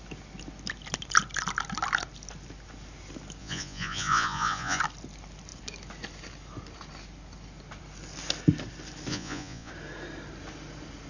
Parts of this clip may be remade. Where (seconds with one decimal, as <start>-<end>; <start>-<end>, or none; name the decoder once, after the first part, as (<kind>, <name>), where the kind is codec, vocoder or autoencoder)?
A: 3.4-4.8 (vocoder, Vocos); 9.1-9.7